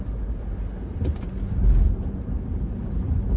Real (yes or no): yes